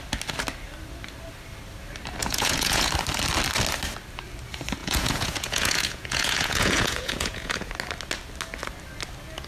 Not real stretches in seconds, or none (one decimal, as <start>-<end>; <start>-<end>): 2.2-2.9; 4.8-7.7